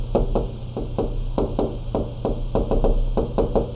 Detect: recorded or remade recorded